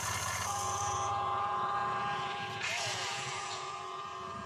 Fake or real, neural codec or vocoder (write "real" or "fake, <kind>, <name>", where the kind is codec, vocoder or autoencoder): fake, vocoder, Vocos